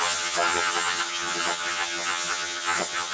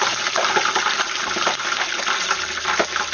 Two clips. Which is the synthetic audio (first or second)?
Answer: first